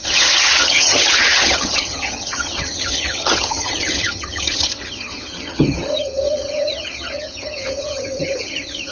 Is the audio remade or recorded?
remade